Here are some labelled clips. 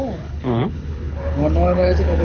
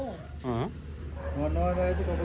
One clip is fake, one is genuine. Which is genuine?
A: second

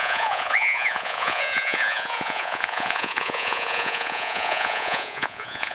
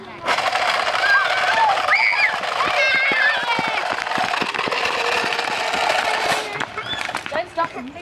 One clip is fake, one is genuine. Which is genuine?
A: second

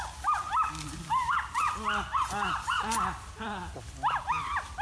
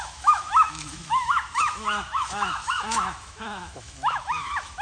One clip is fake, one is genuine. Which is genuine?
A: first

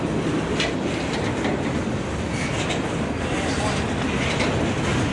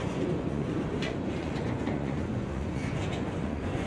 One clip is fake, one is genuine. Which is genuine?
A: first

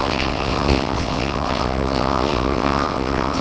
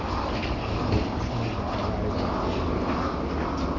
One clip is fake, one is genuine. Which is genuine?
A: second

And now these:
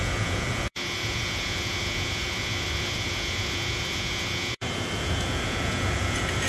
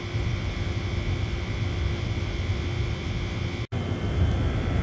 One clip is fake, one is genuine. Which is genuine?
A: second